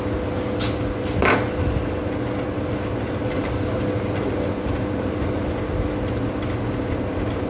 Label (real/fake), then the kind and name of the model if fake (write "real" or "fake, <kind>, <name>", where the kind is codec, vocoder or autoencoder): real